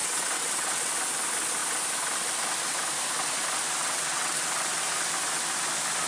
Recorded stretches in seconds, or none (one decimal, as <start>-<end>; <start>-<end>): 0.9-3.8; 4.4-6.1